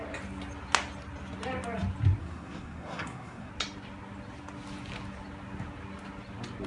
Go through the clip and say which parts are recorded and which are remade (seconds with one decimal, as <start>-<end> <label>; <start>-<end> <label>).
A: 0.0-2.2 recorded; 2.2-3.5 remade; 3.5-6.7 recorded

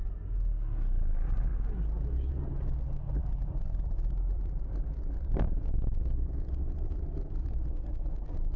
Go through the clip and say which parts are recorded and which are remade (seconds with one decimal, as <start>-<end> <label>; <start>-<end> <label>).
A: 0.0-3.2 recorded; 3.2-7.5 remade; 7.5-8.6 recorded

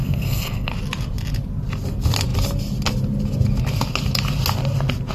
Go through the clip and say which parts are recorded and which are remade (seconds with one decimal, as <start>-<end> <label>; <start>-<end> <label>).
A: 0.0-0.7 remade; 0.7-5.1 recorded

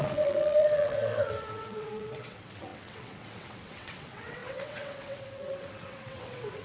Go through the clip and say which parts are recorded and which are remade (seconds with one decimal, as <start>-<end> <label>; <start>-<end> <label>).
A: 0.0-6.6 remade

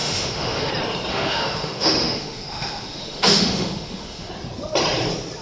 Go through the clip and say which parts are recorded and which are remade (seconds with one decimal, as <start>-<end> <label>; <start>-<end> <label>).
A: 0.0-0.7 remade; 0.7-1.1 recorded; 1.1-4.3 remade; 4.3-5.4 recorded

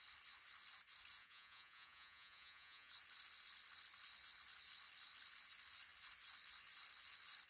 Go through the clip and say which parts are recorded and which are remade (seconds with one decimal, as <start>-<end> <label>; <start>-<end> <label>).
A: 0.0-1.2 recorded; 1.2-2.9 remade; 2.9-7.5 recorded

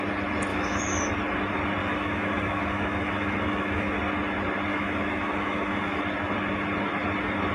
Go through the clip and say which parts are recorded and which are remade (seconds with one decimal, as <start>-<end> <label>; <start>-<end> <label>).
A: 0.0-0.5 recorded; 0.5-1.1 remade; 1.1-1.8 recorded; 1.8-4.0 remade; 4.0-4.7 recorded; 4.7-6.0 remade; 6.0-7.5 recorded

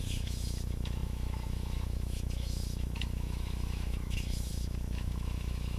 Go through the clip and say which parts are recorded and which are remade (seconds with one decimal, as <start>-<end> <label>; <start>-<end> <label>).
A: 0.0-5.8 remade